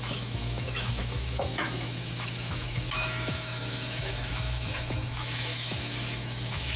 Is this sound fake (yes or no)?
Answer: yes